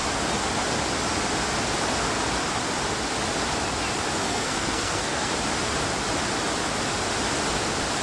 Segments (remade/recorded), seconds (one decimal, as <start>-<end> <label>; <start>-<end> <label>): 0.0-4.2 recorded; 4.2-5.3 remade; 5.3-8.0 recorded